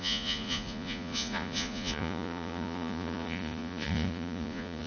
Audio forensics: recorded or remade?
remade